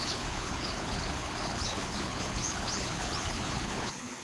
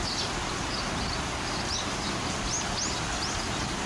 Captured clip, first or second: second